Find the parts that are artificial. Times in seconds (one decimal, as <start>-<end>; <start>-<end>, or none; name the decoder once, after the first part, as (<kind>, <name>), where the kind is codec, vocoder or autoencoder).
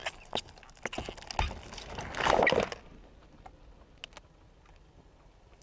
none